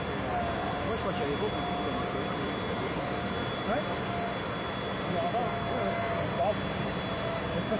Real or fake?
real